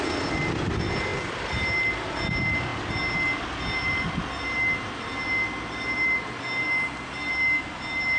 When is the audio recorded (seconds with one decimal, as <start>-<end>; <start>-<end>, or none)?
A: 0.0-8.2